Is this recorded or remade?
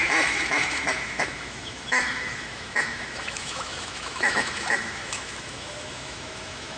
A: remade